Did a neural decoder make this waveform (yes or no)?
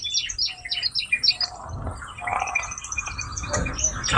no